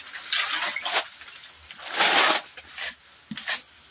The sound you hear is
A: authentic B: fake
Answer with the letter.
A